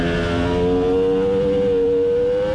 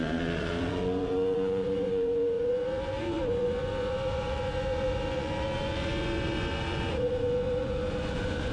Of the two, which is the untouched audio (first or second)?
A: first